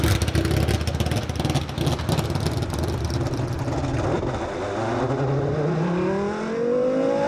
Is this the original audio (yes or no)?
yes